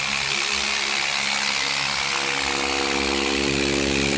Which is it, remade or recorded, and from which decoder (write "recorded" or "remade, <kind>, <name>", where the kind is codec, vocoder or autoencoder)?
recorded